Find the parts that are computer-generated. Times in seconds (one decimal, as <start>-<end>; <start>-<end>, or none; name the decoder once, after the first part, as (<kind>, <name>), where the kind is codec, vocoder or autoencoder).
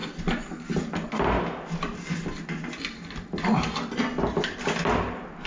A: none